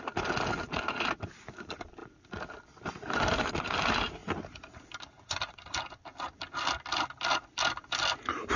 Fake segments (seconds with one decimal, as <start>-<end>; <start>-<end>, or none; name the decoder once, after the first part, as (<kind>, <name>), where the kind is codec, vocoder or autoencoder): none